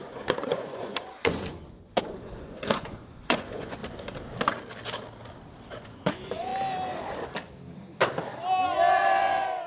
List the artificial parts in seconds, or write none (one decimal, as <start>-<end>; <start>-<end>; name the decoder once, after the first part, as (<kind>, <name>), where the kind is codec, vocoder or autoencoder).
0.0-3.8 (vocoder, Vocos); 5.7-6.5; 8.9-9.7